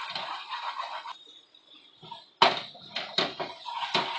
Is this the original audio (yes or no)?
yes